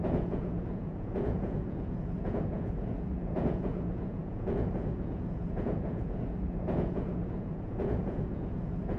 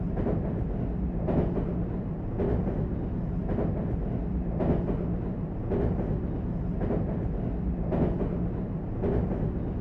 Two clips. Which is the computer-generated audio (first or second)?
first